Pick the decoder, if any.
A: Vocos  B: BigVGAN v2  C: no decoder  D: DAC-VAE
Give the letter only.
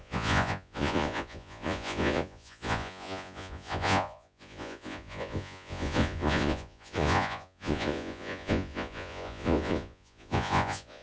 A